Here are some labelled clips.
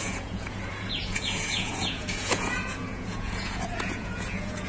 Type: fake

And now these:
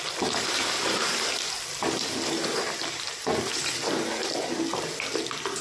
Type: real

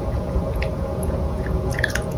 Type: fake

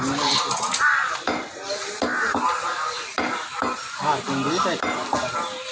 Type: real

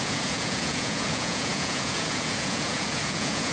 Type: fake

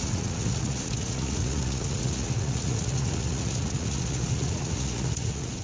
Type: fake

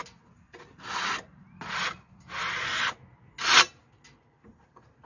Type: real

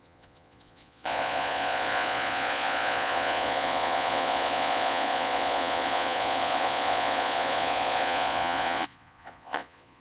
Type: fake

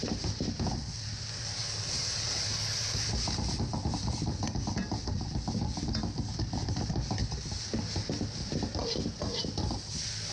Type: real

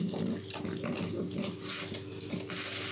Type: real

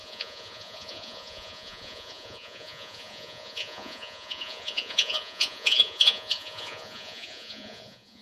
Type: fake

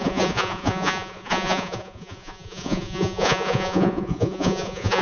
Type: fake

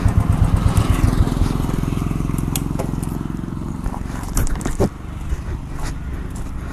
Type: real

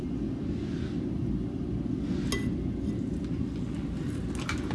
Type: real